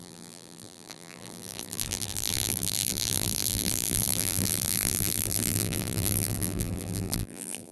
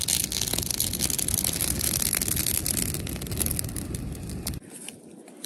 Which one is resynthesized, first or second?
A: first